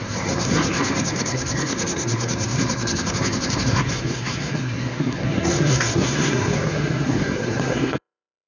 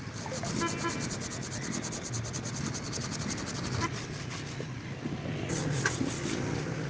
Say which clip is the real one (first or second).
second